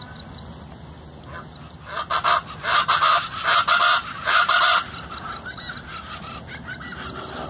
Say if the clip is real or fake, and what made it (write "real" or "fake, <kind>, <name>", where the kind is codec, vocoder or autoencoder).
real